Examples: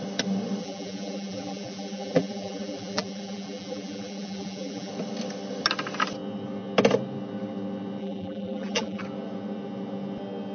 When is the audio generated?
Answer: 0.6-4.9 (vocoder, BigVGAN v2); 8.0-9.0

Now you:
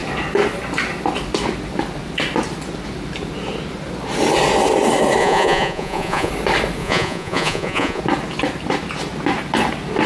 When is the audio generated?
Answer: 5.2-6.3 (vocoder, Vocos); 6.8-8.0

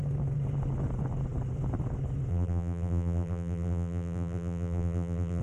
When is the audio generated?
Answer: 2.3-5.4 (vocoder, BigVGAN v2)